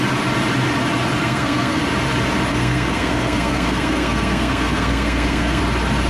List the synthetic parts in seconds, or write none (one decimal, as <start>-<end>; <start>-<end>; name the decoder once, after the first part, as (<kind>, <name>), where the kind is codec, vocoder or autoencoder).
1.2-1.8 (codec, SNAC); 2.5-5.6

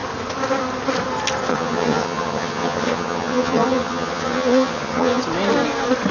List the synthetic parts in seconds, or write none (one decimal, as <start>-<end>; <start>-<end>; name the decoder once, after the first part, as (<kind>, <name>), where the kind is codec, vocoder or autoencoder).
1.5-5.2 (vocoder, HiFi-GAN)